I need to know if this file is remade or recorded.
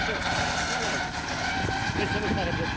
recorded